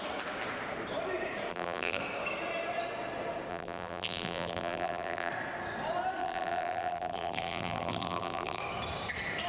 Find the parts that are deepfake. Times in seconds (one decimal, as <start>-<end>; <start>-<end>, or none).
1.5-2.0; 3.5-5.3; 6.2-8.6